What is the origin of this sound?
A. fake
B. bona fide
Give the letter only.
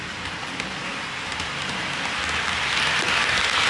B